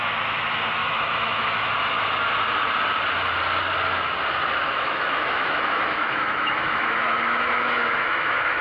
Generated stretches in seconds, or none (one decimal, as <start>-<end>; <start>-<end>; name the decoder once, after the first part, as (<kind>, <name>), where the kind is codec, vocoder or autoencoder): 0.8-1.7 (autoencoder, DAC-VAE); 4.7-8.6